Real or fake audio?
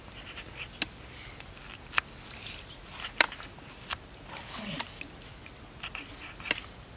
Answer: real